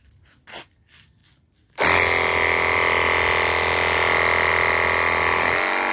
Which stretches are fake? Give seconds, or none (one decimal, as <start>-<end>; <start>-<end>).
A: none

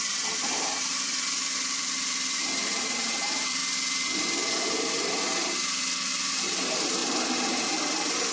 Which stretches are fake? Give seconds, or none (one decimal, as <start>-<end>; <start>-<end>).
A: 0.0-3.6; 4.7-8.3

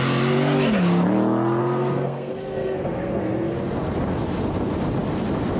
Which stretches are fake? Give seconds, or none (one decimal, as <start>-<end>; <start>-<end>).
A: 1.6-3.5

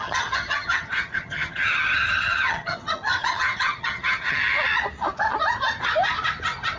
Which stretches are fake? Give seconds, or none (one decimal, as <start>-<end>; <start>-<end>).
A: 0.0-4.4